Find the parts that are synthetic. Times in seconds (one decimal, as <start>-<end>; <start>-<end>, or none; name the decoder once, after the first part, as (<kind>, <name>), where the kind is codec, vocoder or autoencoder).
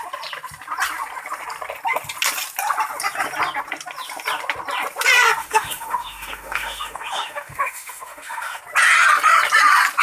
5.4-8.6 (autoencoder, DAC-VAE)